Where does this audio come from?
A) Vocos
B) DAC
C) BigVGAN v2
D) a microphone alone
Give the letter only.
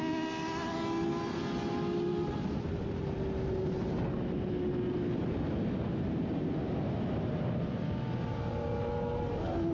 D